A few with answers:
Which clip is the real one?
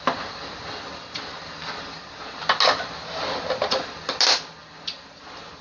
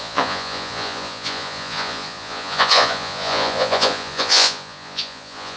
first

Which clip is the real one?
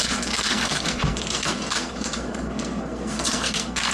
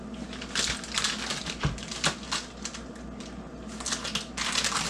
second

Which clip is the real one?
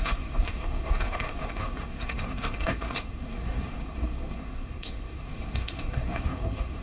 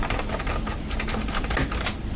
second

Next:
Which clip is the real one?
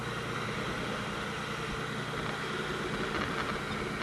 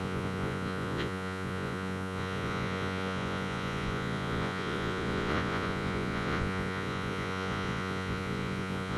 first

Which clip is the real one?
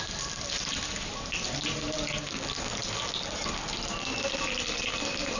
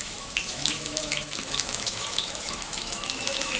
first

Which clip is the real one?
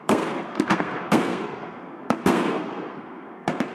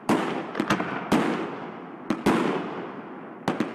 second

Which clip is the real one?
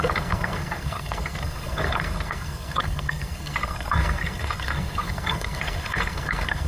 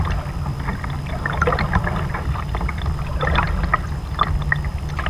second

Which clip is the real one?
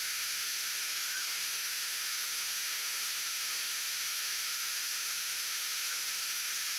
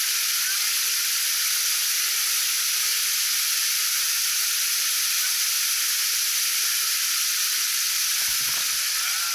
second